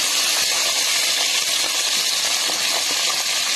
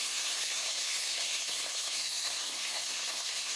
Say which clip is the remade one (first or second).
second